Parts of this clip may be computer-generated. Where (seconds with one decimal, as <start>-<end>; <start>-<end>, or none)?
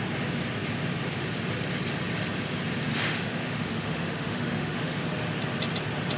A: 2.9-5.0